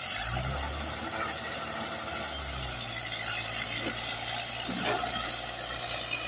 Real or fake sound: real